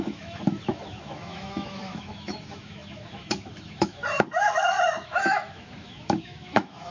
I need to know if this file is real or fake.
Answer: fake